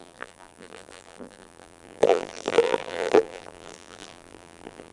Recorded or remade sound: remade